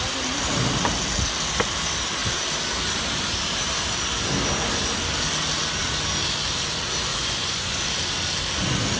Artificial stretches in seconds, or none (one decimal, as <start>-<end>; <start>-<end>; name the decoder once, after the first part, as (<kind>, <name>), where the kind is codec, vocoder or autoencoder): 7.1-7.8 (vocoder, Vocos)